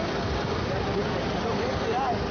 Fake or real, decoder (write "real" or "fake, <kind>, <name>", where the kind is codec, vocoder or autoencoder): real